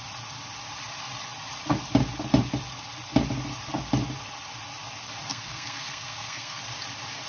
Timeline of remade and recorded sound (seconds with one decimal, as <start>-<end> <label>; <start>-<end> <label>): 0.0-5.3 recorded; 5.3-6.6 remade; 6.6-7.3 recorded